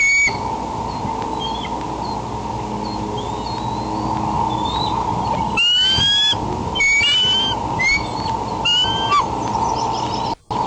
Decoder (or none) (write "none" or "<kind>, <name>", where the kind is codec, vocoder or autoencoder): none